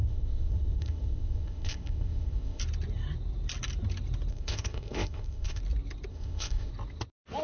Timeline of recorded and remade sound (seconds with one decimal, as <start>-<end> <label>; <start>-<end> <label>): 0.0-2.6 remade; 2.6-4.3 recorded; 4.3-5.6 remade; 5.6-6.1 recorded; 6.1-6.7 remade; 6.7-7.4 recorded